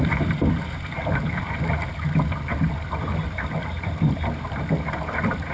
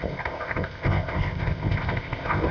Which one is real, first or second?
first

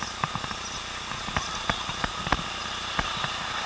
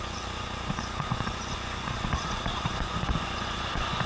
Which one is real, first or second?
first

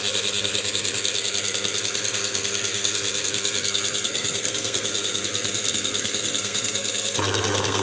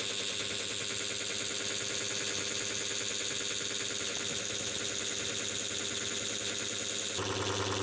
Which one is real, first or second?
second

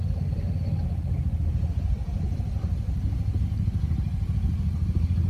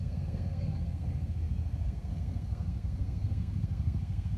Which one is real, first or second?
first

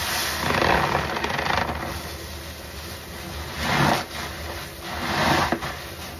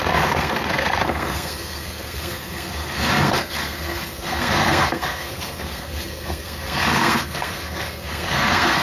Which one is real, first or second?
first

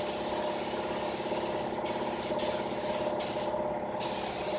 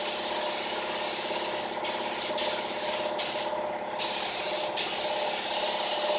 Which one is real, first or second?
second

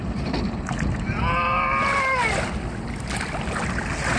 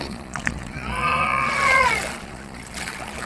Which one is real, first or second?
first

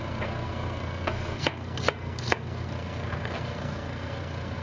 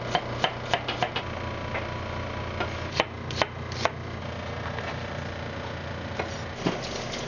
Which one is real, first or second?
second